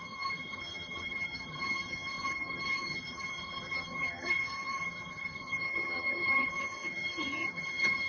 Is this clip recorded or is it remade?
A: remade